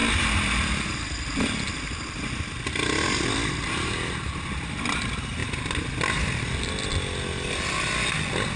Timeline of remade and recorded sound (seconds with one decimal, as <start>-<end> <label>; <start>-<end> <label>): 0.0-8.6 recorded